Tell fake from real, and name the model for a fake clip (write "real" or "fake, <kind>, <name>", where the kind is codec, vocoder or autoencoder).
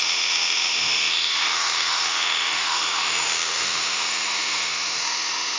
fake, autoencoder, DAC-VAE